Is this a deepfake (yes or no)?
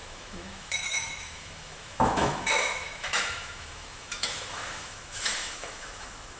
yes